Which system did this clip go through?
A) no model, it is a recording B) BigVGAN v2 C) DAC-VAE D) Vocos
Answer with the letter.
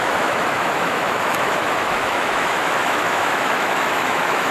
C